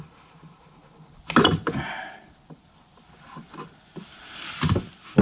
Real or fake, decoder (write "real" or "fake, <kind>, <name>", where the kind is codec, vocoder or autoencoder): real